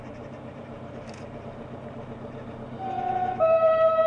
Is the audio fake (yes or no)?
yes